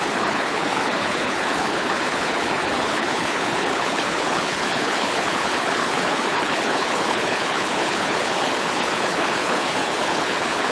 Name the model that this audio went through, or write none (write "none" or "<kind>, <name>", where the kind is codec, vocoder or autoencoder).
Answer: codec, HILCodec